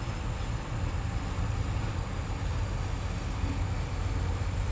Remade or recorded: recorded